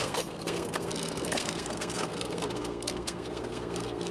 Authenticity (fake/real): fake